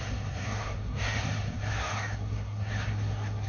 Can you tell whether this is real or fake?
fake